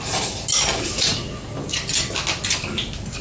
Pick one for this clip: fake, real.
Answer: real